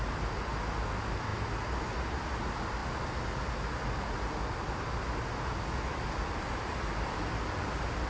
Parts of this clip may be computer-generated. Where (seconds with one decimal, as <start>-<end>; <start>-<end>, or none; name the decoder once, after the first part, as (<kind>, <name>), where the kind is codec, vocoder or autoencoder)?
none